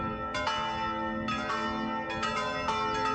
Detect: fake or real real